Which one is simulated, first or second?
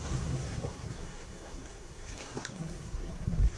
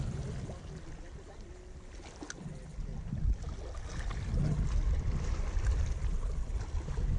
first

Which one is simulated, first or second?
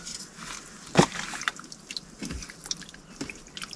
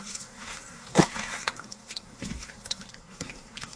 second